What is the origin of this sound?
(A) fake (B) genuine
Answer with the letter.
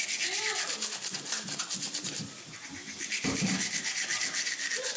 B